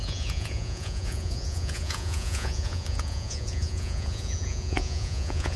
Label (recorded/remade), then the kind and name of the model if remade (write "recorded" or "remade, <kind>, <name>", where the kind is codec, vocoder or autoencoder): remade, vocoder, Vocos